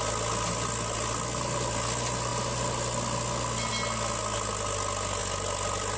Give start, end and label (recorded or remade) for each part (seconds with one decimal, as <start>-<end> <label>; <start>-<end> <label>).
0.0-6.0 recorded